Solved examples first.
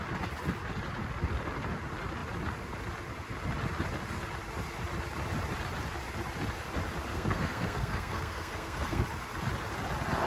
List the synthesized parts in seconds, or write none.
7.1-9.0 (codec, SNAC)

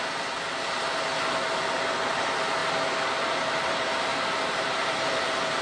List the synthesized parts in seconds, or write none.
none

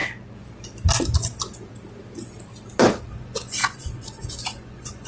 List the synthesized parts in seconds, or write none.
3.1-5.1 (vocoder, Vocos)

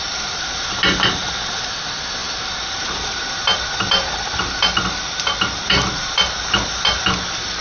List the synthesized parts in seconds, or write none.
0.0-7.6 (vocoder, BigVGAN v2)

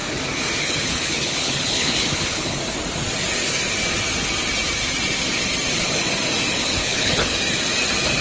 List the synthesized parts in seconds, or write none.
0.6-2.6 (codec, HILCodec); 6.5-7.3